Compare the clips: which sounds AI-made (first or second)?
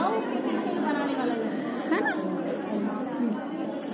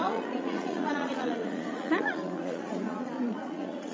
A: second